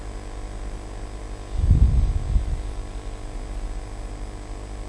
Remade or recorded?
recorded